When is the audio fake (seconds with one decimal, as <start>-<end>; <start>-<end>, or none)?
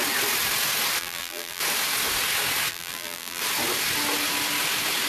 1.0-1.6; 2.7-3.4